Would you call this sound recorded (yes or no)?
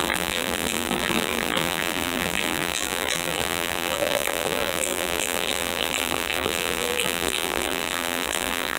no